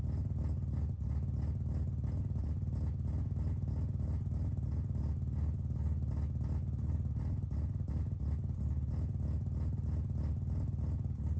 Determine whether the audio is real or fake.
real